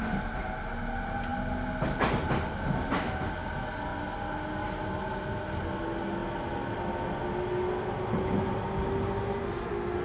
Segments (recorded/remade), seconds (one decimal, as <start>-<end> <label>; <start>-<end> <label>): 0.0-10.0 recorded